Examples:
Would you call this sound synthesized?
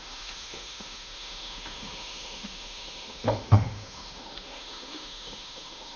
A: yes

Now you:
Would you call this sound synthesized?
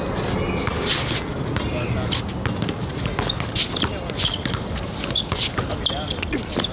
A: no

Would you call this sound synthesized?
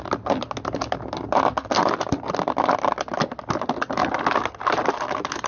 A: no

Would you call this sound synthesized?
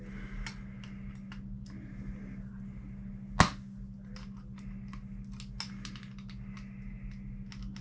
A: no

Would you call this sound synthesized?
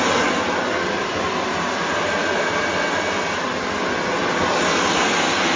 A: no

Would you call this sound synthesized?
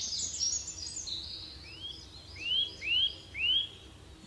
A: no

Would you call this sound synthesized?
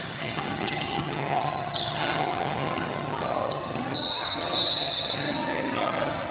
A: yes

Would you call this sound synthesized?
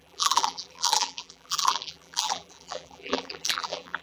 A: yes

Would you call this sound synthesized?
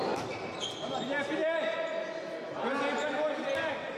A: no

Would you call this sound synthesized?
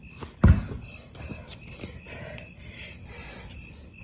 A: no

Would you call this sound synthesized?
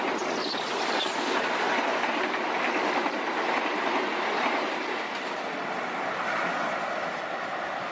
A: no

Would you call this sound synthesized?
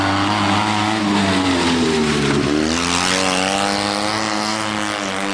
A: no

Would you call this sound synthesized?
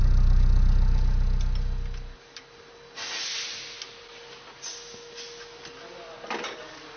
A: no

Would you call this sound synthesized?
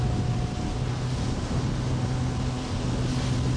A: no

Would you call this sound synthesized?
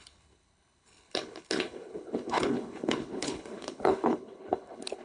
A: yes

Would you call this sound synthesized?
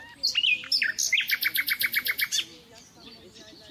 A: no